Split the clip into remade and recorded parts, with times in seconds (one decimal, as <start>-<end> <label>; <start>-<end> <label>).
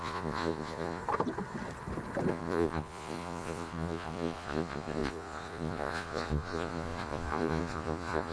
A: 0.0-1.0 remade; 1.0-2.3 recorded; 2.3-8.3 remade